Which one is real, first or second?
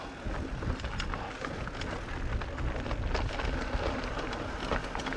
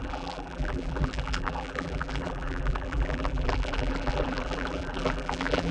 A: first